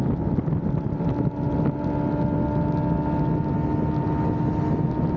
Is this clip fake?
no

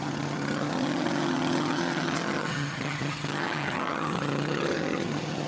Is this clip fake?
yes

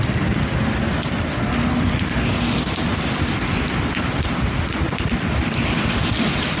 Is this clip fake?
yes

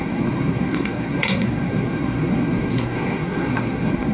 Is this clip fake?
yes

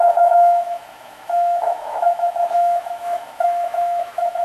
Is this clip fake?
yes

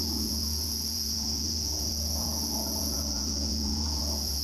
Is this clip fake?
yes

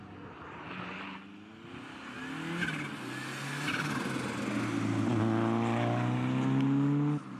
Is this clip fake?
no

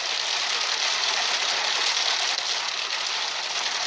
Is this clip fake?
no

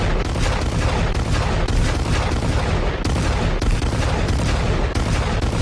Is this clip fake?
no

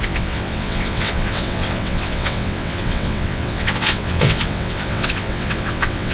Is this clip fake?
yes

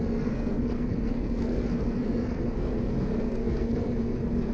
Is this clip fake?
yes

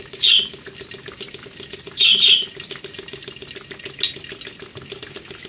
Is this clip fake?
no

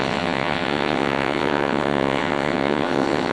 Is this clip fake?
yes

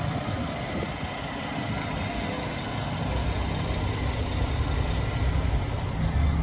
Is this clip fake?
no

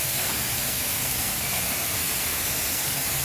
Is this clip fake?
yes